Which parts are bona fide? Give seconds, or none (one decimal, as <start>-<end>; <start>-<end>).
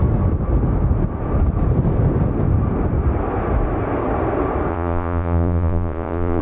0.0-4.7